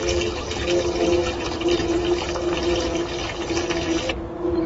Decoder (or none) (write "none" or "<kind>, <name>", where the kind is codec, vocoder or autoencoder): none